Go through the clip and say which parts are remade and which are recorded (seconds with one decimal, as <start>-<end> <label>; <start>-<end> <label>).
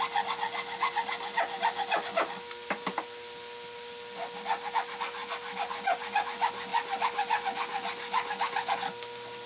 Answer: 0.0-9.5 recorded